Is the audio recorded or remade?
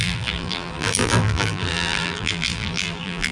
remade